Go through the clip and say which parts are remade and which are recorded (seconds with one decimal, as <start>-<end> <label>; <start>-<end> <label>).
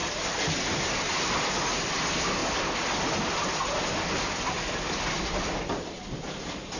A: 0.0-6.8 recorded